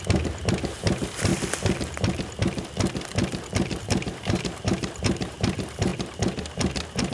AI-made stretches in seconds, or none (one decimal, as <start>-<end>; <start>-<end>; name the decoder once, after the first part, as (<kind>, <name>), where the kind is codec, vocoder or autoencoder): 0.0-1.3 (vocoder, BigVGAN v2); 3.8-5.9